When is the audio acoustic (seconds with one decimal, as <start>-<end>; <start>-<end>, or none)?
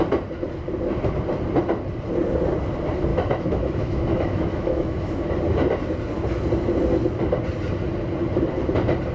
0.0-3.1; 5.3-9.1